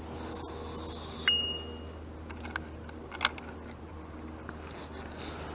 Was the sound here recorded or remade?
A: recorded